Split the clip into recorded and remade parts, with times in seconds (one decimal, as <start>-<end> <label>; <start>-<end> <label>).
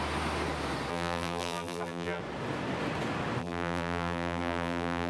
0.0-0.9 recorded; 0.9-2.2 remade; 2.2-3.4 recorded; 3.4-5.1 remade